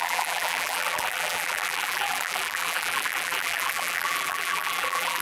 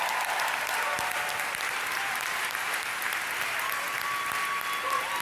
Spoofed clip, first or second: first